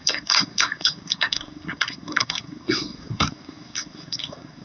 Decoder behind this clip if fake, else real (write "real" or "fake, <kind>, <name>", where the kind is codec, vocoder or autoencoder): fake, codec, SNAC